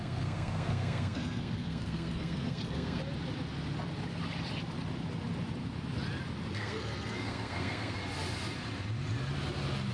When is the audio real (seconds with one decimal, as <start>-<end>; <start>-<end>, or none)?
3.0-6.5; 8.0-9.9